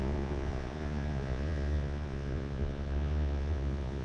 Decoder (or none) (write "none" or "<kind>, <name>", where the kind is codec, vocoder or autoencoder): vocoder, Vocos